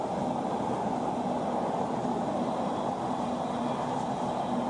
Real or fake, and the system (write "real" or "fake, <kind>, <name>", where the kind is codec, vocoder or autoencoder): real